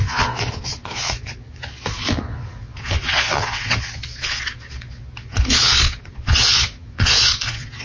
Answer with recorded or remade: remade